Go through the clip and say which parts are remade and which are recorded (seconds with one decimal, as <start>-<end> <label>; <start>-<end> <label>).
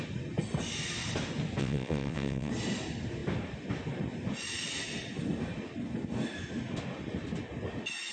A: 0.0-1.6 recorded; 1.6-2.5 remade; 2.5-8.1 recorded